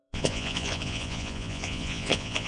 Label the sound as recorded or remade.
remade